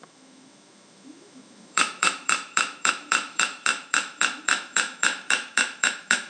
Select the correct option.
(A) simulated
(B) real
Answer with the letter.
A